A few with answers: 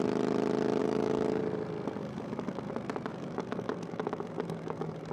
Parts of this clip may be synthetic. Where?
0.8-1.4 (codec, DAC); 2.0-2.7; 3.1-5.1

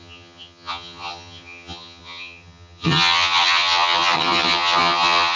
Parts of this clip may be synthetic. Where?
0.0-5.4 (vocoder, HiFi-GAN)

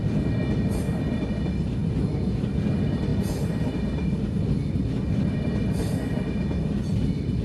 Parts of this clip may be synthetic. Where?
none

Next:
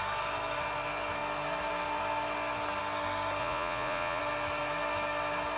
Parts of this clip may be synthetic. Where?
3.4-4.2 (vocoder, Vocos)

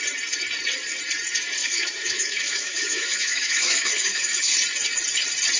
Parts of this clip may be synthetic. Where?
1.6-4.4 (autoencoder, DAC-VAE)

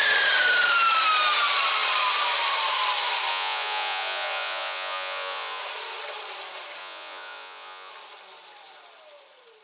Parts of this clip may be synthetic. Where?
3.3-5.6 (vocoder, Vocos); 6.8-7.9